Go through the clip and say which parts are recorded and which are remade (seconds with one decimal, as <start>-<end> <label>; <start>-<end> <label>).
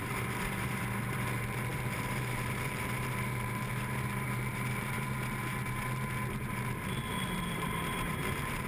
0.0-8.7 remade